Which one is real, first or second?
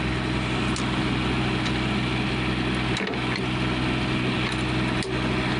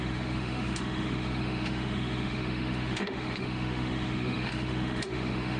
first